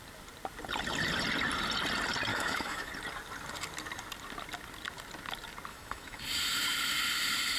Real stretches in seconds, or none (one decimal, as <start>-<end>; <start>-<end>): 0.0-2.3; 2.9-5.7; 6.2-7.6

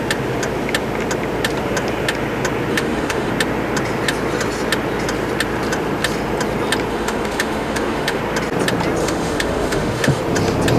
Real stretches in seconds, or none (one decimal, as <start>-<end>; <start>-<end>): 0.0-2.7; 3.3-6.9; 8.2-9.0; 10.2-10.8

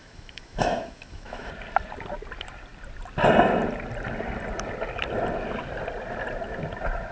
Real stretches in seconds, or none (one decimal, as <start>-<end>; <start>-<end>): 1.5-7.1

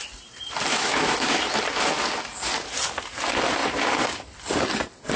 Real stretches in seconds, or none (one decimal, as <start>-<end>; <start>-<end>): 0.0-0.7; 1.4-5.2

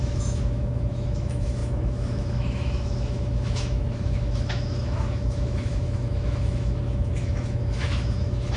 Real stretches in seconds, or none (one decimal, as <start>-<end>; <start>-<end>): none